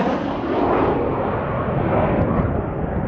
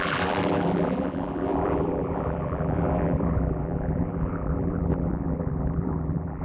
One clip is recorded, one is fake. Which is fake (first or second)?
second